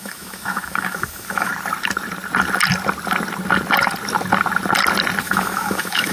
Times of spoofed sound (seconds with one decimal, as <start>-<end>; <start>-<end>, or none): 0.0-1.5; 5.2-6.1